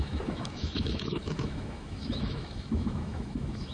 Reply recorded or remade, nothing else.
remade